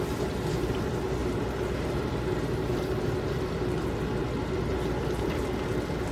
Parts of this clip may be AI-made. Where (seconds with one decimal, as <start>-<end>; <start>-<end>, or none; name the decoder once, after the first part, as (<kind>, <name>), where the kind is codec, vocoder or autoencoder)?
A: 1.2-2.0 (vocoder, BigVGAN v2)